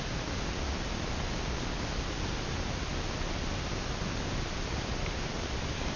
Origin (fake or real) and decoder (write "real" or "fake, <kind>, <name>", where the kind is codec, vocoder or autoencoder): real